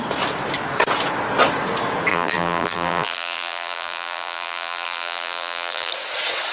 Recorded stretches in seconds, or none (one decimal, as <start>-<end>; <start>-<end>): 0.0-2.1; 5.9-6.5